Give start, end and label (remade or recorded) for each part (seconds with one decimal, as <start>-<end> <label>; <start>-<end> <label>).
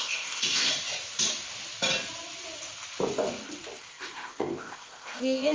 0.0-0.7 remade; 0.7-3.8 recorded; 3.8-5.5 remade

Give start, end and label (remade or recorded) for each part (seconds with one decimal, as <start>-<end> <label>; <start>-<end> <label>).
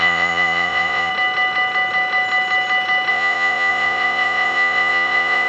0.0-1.1 remade; 1.1-3.1 recorded; 3.1-5.5 remade